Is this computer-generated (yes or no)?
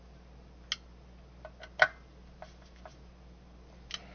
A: no